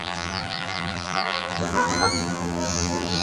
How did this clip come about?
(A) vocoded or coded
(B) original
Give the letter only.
A